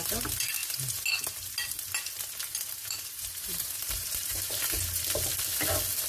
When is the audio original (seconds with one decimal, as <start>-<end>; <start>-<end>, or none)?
0.0-2.8; 5.0-6.1